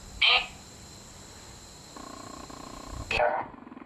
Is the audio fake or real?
real